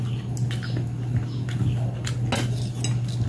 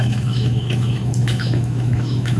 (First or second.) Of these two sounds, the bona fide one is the first